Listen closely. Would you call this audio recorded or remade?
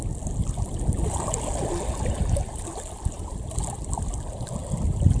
recorded